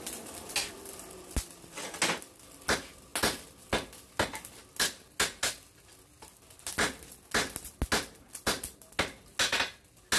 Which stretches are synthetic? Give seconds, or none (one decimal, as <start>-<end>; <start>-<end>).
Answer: none